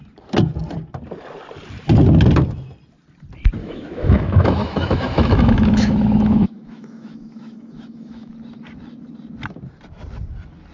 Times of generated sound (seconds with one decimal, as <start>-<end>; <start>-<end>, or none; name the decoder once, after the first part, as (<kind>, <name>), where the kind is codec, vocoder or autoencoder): 3.6-8.3 (autoencoder, DAC-VAE)